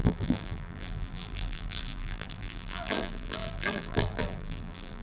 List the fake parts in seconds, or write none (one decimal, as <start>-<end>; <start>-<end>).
0.0-5.0

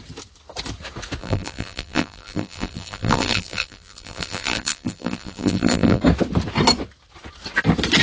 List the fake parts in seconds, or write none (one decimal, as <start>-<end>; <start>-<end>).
1.2-6.0